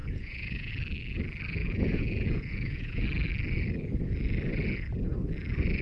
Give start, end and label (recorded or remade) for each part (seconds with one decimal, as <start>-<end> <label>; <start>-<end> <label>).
0.0-0.7 remade; 0.7-1.6 recorded; 1.6-3.0 remade; 3.0-5.8 recorded

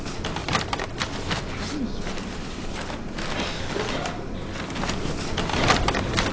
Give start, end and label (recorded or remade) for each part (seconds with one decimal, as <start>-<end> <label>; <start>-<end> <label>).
0.0-0.4 recorded; 0.4-1.0 remade; 1.0-5.5 recorded; 5.5-6.3 remade

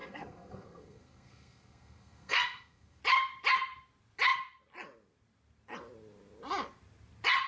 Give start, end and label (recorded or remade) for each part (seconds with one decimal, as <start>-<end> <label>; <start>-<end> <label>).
0.0-3.0 remade; 3.0-7.5 recorded

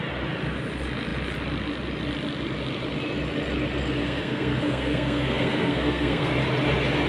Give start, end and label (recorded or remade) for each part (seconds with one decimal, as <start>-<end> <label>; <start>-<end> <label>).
0.0-4.0 recorded; 4.0-6.3 remade; 6.3-7.1 recorded

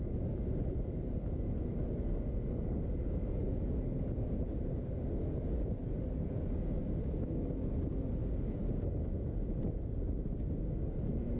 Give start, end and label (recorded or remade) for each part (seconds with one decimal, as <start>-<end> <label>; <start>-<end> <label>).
0.0-11.4 recorded

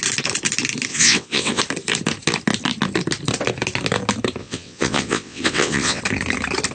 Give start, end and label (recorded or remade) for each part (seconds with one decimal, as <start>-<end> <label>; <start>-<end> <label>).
0.0-0.9 recorded; 0.9-1.6 remade; 1.6-4.4 recorded; 4.4-6.0 remade; 6.0-6.7 recorded

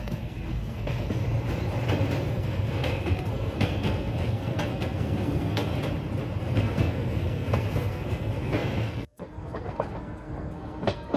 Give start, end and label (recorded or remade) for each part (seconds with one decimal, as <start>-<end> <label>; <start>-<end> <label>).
0.0-1.2 remade; 1.2-2.3 recorded; 2.3-5.7 remade; 5.7-6.4 recorded; 6.4-11.2 remade

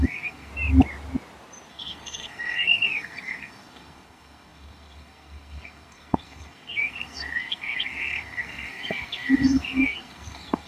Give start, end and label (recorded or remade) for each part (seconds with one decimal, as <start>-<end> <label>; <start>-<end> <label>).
0.0-0.5 remade; 0.5-1.7 recorded; 1.7-10.7 remade